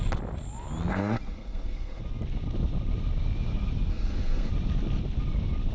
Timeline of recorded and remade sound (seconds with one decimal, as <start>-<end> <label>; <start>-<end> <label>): 0.0-0.9 recorded; 0.9-2.0 remade; 2.0-3.9 recorded; 3.9-4.5 remade; 4.5-5.7 recorded